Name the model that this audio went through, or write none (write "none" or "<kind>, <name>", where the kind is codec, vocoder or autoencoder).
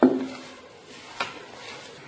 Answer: none